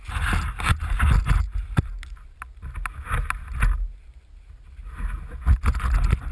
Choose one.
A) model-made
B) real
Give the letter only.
B